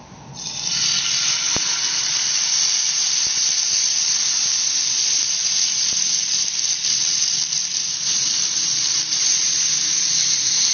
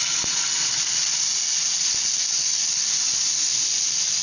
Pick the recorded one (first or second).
second